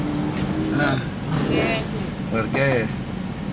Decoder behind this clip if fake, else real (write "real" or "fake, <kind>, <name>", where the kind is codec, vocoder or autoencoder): real